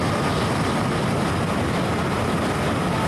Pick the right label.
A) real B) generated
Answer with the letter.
A